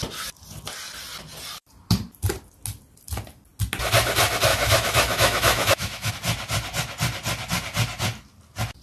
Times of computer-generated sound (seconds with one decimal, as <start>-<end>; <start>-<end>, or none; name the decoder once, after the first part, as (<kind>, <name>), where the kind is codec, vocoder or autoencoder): 4.5-6.1 (autoencoder, DAC-VAE)